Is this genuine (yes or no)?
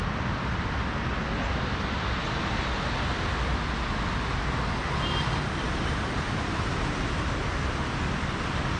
yes